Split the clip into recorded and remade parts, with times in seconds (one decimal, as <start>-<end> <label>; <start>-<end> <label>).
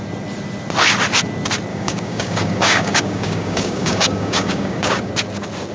0.0-1.7 recorded; 1.7-5.1 remade; 5.1-5.7 recorded